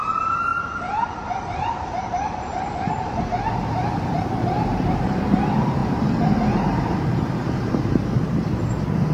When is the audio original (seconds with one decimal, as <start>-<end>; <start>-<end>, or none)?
none